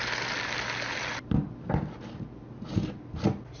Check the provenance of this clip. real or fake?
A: real